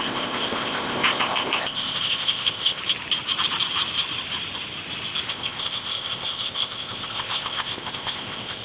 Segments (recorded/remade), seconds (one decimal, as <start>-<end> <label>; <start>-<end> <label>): 0.0-2.8 remade; 2.8-5.3 recorded; 5.3-8.6 remade